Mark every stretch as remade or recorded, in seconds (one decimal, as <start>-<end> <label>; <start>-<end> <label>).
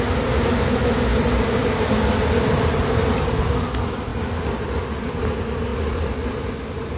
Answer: 0.0-7.0 recorded